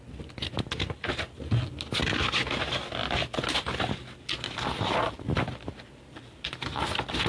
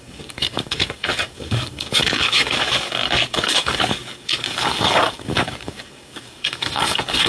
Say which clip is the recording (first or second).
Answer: first